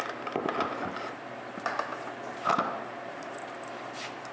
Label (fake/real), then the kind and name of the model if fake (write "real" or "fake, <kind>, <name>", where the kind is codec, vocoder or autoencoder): real